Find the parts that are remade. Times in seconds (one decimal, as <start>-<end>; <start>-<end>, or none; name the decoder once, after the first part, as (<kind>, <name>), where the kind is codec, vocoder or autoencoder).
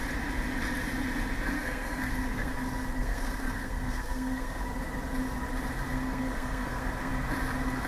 1.5-2.5 (codec, SNAC); 3.0-4.6; 5.9-7.1